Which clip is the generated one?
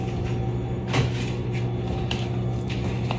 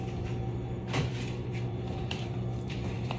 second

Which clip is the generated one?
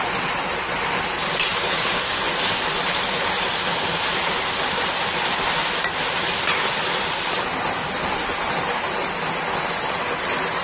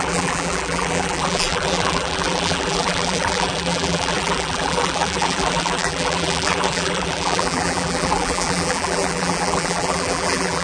second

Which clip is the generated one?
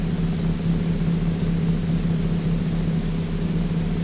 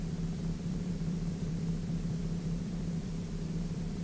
second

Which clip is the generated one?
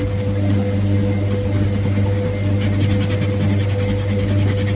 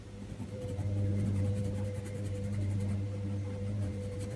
second